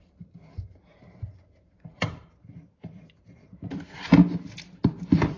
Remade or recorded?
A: recorded